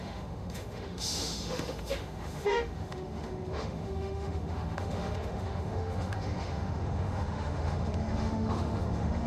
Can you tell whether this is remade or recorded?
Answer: remade